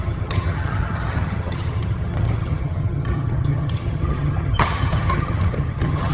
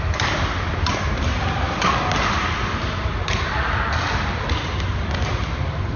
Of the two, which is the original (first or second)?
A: second